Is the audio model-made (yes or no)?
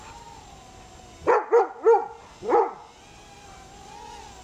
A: no